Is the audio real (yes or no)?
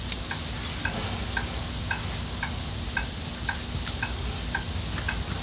yes